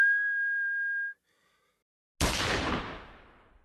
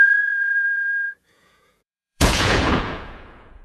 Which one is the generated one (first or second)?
second